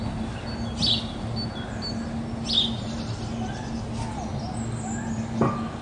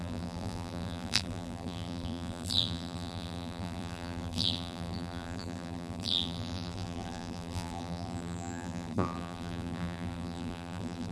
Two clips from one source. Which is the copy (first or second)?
second